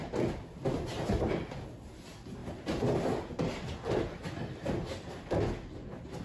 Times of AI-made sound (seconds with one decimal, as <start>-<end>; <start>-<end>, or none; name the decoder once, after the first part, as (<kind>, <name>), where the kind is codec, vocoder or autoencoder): none